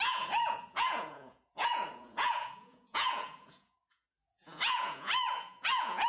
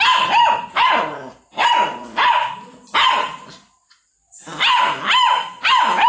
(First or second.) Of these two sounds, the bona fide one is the second